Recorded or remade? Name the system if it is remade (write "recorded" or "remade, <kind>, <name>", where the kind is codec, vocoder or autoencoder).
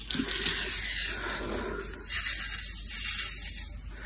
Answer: recorded